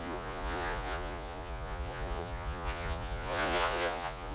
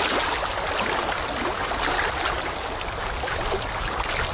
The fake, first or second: first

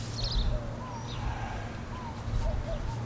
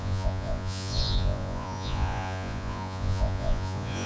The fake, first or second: second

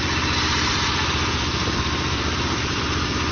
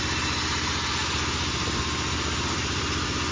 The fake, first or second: first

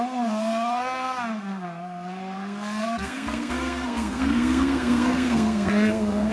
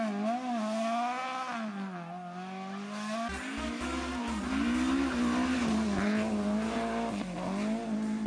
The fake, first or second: first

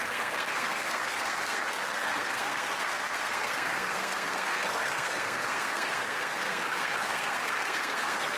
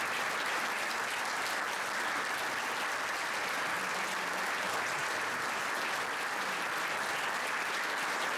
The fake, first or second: first